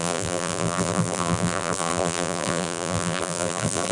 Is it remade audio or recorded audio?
remade